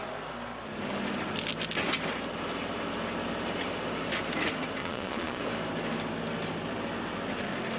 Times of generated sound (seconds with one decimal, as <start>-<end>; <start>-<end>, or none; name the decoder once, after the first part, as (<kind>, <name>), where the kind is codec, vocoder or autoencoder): 4.8-5.4 (vocoder, Vocos)